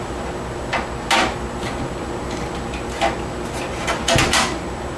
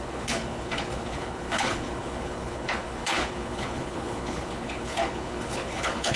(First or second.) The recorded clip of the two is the first